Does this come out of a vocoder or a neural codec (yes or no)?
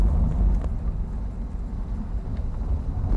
no